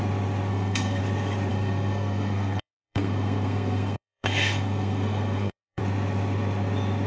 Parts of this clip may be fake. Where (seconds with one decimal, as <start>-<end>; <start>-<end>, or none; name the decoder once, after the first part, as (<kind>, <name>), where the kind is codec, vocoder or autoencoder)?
0.5-1.0 (codec, SNAC); 1.5-5.8